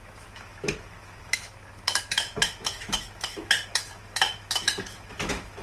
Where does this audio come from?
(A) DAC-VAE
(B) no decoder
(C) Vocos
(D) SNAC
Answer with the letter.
A